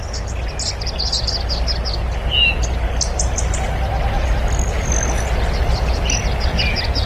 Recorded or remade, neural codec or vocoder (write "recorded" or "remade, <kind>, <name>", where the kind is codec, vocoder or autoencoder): recorded